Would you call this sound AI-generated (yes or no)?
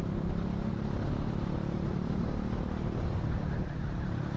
yes